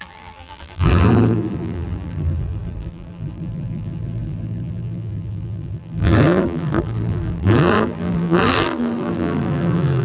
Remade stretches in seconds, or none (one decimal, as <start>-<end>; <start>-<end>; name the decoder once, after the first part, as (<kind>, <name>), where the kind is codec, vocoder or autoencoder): 0.0-10.0 (vocoder, BigVGAN v2)